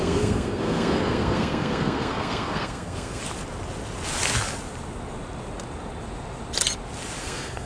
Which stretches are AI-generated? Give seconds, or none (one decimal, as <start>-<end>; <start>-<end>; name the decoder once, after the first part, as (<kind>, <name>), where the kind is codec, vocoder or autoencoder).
0.0-3.2 (codec, SNAC); 7.2-7.7